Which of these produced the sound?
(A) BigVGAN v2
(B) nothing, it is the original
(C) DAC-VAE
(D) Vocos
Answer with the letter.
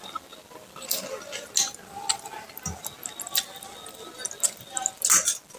B